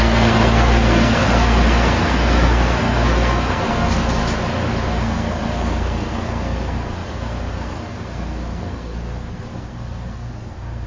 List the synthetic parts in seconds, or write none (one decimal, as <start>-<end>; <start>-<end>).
0.0-4.2; 4.9-10.9